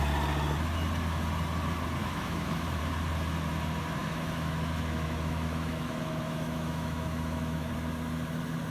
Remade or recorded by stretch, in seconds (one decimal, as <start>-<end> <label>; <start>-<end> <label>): 0.0-2.0 recorded; 2.0-2.8 remade; 2.8-4.0 recorded; 4.0-7.7 remade; 7.7-8.7 recorded